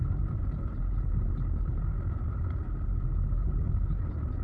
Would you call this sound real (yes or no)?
yes